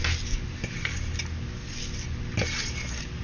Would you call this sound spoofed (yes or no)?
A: no